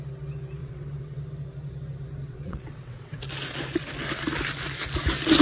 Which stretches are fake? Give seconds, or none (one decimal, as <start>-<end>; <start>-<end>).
0.6-1.2; 2.2-3.2